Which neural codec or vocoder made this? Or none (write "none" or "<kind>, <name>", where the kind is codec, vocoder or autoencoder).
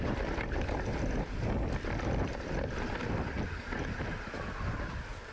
none